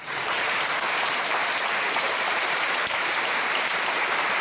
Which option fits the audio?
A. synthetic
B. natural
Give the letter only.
A